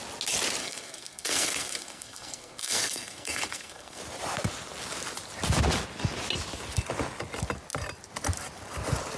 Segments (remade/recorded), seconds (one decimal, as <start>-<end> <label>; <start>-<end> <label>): 0.0-0.6 recorded; 0.6-4.0 remade; 4.0-9.2 recorded

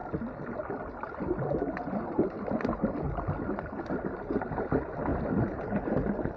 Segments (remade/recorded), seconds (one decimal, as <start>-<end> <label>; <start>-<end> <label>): 0.0-6.4 recorded

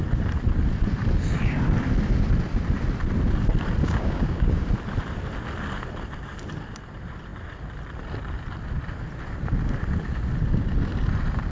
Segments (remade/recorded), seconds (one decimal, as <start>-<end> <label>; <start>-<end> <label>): 0.0-3.8 recorded; 3.8-4.7 remade; 4.7-11.5 recorded

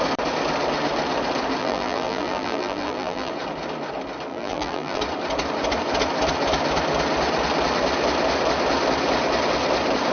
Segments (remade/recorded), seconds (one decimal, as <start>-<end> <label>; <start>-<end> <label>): 0.0-1.6 recorded; 1.6-3.3 remade; 3.3-4.3 recorded; 4.3-5.0 remade; 5.0-10.1 recorded

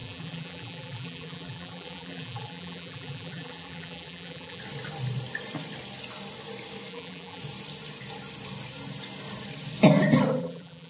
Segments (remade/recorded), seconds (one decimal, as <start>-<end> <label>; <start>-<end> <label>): 0.0-4.6 remade; 4.6-6.9 recorded; 6.9-7.4 remade; 7.4-10.4 recorded; 10.4-10.9 remade

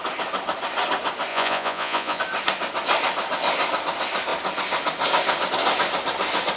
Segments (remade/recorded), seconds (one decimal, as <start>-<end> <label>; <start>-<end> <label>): 0.0-1.3 recorded; 1.3-2.2 remade; 2.2-6.6 recorded